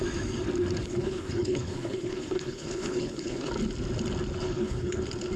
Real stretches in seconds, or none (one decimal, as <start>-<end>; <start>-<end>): 0.0-0.8; 3.5-4.4; 5.0-5.4